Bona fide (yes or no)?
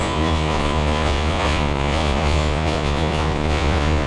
no